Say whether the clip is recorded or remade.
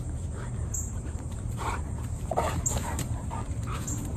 remade